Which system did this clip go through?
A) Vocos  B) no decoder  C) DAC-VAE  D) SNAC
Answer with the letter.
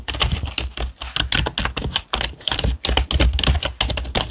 B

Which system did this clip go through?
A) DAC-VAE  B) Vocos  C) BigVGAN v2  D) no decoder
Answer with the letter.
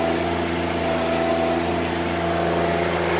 D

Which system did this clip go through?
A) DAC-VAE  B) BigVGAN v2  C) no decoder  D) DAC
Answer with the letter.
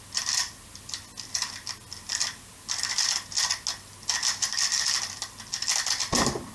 C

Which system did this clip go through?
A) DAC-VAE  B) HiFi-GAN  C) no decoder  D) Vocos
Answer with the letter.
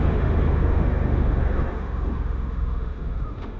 A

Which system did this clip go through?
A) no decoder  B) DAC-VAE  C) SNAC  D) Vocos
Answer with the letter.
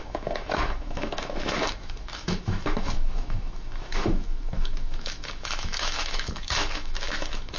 B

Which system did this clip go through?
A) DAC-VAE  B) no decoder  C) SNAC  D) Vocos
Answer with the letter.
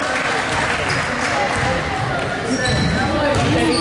B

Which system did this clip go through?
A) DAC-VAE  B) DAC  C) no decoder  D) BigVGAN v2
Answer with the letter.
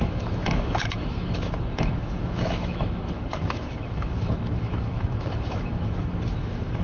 A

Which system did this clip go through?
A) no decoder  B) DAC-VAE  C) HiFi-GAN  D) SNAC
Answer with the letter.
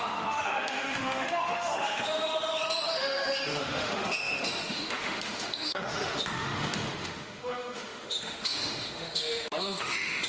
B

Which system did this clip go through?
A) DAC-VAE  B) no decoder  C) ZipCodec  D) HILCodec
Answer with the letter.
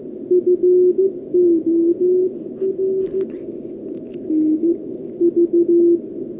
B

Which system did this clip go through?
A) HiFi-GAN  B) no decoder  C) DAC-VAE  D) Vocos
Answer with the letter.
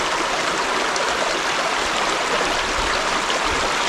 B